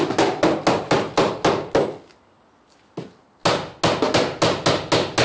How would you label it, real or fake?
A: real